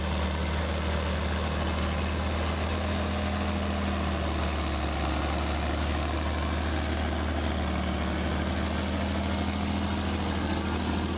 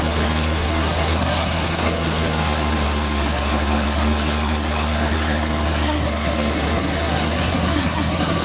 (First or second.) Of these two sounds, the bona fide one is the first